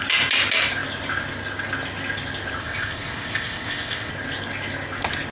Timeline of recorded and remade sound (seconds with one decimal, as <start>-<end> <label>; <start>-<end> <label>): 0.0-2.6 recorded; 2.6-4.1 remade; 4.1-5.3 recorded